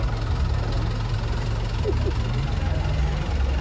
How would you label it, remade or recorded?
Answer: recorded